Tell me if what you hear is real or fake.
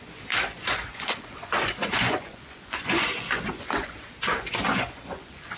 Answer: fake